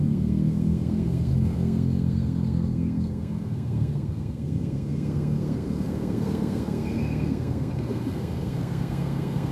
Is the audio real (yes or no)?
no